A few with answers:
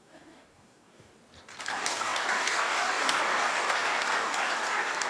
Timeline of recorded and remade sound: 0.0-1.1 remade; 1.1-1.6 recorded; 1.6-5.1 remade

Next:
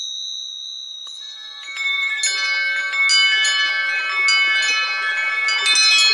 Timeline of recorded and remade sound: 0.0-0.9 recorded; 0.9-2.2 remade; 2.2-6.1 recorded

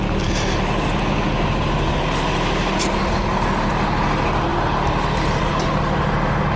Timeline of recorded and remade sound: 0.0-6.6 recorded

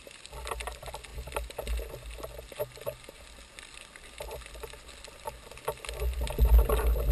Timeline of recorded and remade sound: 0.0-7.1 recorded